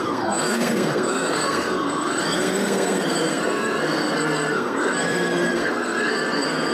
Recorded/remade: remade